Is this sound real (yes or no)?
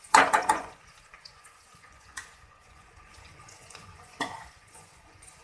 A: no